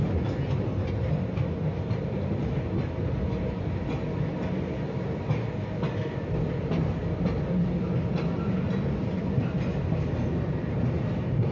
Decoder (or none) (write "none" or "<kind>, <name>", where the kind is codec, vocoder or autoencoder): none